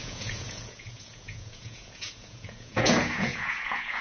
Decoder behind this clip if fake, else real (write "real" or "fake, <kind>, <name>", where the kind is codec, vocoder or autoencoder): fake, vocoder, Vocos